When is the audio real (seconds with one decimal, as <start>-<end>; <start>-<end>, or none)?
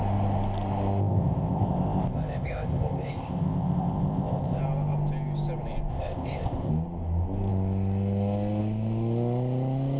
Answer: 0.0-1.0; 4.6-5.9; 6.7-10.0